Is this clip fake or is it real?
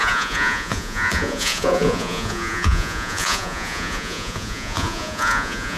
fake